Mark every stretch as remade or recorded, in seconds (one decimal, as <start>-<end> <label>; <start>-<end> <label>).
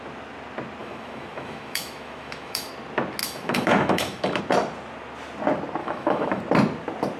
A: 0.0-0.8 recorded; 0.8-2.7 remade; 2.7-3.2 recorded; 3.2-4.4 remade; 4.4-5.8 recorded; 5.8-6.4 remade; 6.4-7.2 recorded